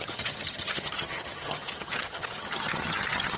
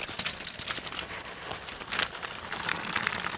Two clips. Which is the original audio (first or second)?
second